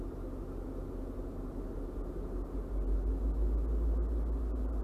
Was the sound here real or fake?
real